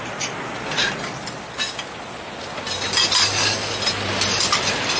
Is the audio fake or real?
real